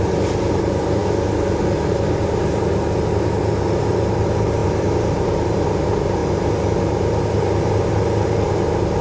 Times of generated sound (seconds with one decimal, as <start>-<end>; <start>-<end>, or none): 0.0-1.0; 1.9-6.2; 6.7-9.0